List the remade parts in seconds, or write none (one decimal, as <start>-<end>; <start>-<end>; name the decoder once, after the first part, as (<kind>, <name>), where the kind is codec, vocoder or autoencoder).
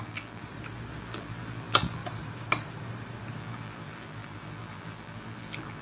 0.0-0.4 (vocoder, BigVGAN v2); 1.0-2.0; 3.4-5.8